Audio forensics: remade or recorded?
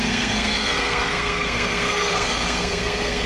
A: remade